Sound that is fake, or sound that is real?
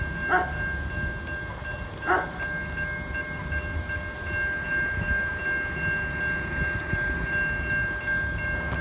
real